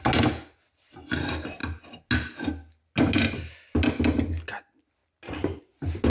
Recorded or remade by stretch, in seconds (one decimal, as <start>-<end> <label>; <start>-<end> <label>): 0.0-6.1 recorded

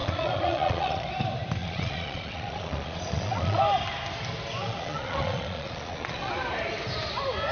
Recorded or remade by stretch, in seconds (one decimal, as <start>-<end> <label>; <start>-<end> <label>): 0.0-1.1 remade; 1.1-1.6 recorded; 1.6-3.6 remade; 3.6-4.6 recorded; 4.6-6.3 remade; 6.3-7.5 recorded

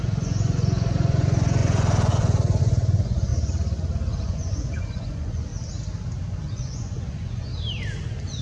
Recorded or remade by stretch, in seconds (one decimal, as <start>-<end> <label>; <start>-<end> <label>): 0.0-3.3 remade; 3.3-4.2 recorded; 4.2-5.5 remade; 5.5-6.4 recorded; 6.4-7.5 remade; 7.5-8.4 recorded

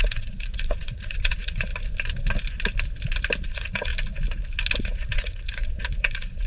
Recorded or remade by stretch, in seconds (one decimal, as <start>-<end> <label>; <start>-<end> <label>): 0.0-1.7 remade; 1.7-3.4 recorded; 3.4-3.9 remade; 3.9-4.8 recorded; 4.8-6.5 remade

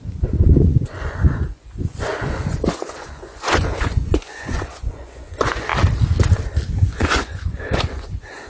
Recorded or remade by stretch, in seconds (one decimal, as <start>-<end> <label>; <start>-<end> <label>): 0.0-5.7 remade; 5.7-6.9 recorded; 6.9-8.5 remade

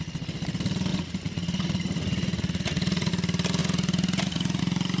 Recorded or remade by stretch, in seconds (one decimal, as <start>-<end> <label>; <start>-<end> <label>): 0.0-0.9 recorded; 0.9-3.1 remade; 3.1-3.6 recorded; 3.6-4.6 remade; 4.6-5.0 recorded

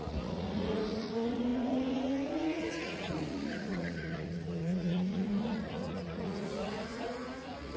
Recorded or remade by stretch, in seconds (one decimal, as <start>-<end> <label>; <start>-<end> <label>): 0.0-7.8 remade

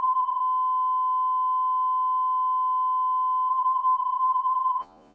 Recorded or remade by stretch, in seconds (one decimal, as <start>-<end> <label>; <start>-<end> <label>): 0.0-0.4 remade; 0.4-3.5 recorded; 3.5-5.1 remade